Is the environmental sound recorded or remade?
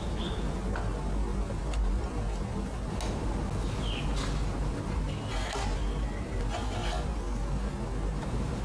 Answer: recorded